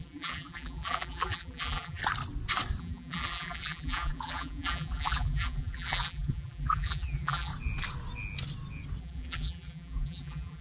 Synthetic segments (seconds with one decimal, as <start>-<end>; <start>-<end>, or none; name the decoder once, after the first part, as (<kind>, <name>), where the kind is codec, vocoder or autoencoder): 0.0-2.0 (vocoder, BigVGAN v2); 2.8-7.5; 9.0-10.6